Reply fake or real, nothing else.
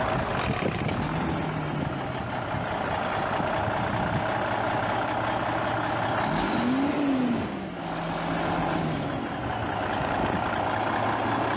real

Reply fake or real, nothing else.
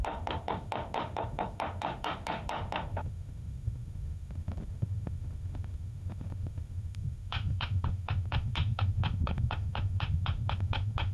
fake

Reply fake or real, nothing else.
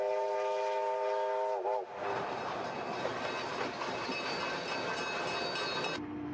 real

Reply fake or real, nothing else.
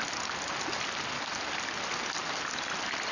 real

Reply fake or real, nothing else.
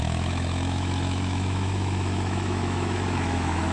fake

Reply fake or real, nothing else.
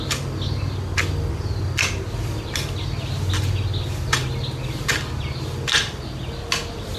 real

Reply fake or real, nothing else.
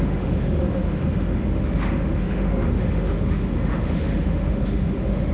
fake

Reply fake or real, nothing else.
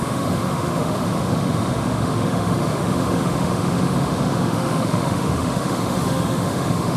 fake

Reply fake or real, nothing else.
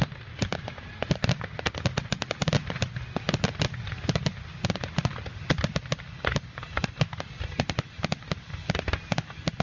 real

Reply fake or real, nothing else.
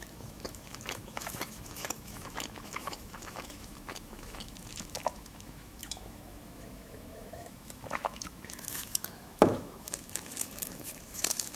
fake